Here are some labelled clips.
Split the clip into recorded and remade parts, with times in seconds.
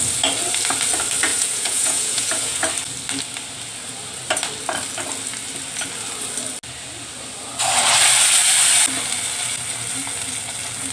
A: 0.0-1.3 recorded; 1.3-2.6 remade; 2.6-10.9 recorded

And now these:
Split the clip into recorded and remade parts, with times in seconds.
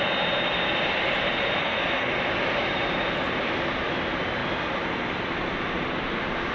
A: 0.0-1.6 recorded; 1.6-2.1 remade; 2.1-6.5 recorded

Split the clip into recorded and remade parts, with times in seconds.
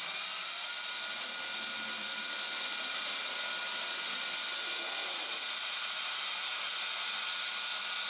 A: 0.0-5.0 recorded; 5.0-6.7 remade; 6.7-8.1 recorded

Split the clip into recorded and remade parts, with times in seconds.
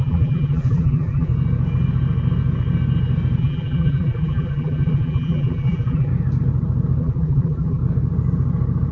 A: 0.0-1.3 remade; 1.3-3.4 recorded; 3.4-6.1 remade; 6.1-7.0 recorded; 7.0-7.8 remade; 7.8-8.9 recorded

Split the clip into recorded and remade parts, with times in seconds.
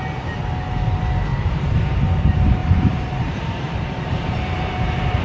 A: 0.0-1.3 recorded; 1.3-1.8 remade; 1.8-2.6 recorded; 2.6-5.2 remade